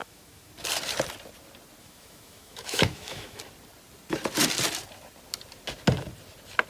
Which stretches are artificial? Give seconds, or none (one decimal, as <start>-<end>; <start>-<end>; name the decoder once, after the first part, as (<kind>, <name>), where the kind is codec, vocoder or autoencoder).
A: 0.0-0.5 (autoencoder, DAC-VAE); 1.8-3.4

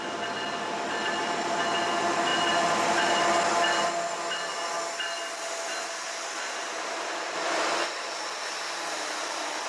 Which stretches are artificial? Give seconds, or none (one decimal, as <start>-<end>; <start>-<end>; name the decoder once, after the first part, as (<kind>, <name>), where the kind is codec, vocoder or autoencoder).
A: none

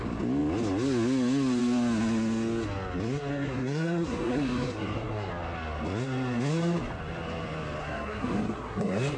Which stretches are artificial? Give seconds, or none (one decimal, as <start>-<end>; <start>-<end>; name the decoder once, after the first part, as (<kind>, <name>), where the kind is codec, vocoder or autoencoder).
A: 3.3-5.3 (codec, SNAC); 7.8-9.2